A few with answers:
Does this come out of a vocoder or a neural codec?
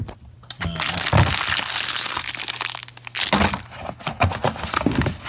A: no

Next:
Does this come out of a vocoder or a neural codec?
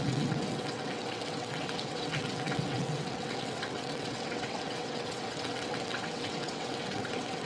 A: yes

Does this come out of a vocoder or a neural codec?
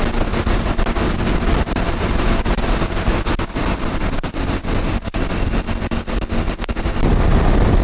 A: no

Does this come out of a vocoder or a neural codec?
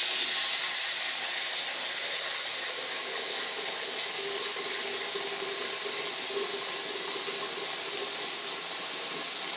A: no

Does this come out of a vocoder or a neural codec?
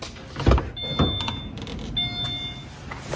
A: no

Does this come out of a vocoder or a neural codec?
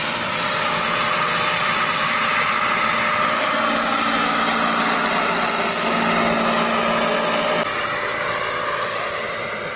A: no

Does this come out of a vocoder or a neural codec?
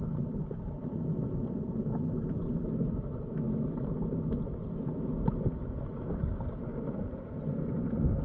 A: no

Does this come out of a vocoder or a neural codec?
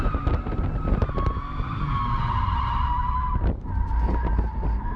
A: no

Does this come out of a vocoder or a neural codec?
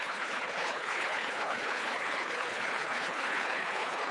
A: yes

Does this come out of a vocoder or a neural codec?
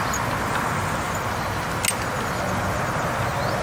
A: no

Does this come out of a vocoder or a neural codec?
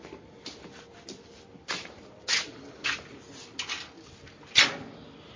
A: no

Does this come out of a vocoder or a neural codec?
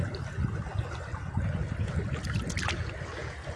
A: no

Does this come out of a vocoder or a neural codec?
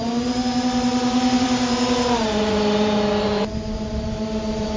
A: yes